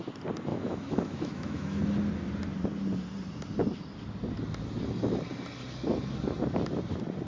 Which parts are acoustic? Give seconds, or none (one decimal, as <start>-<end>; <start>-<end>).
0.0-0.5; 1.8-7.3